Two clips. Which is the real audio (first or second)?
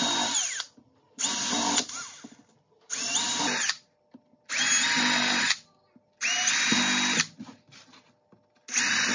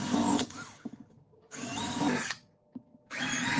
first